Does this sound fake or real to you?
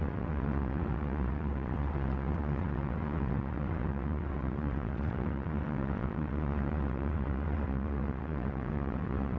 fake